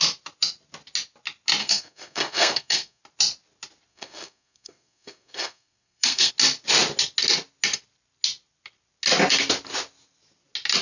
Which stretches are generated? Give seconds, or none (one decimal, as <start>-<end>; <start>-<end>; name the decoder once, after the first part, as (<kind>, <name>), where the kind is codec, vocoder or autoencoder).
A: 1.6-3.0 (codec, SNAC); 3.9-6.3